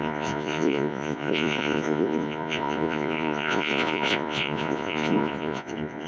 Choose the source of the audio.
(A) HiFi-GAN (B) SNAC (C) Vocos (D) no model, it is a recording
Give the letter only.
C